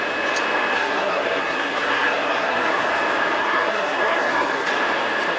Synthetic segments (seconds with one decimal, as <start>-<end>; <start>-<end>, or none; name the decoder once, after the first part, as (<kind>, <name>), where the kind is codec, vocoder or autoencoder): 0.7-2.9 (codec, SNAC); 3.4-4.7